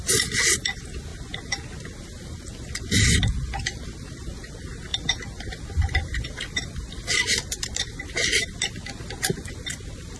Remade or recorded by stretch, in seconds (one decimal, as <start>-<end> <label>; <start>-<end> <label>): 0.0-1.1 remade; 1.1-2.0 recorded; 2.0-10.2 remade